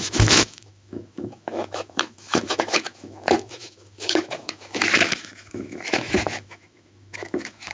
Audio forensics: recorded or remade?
remade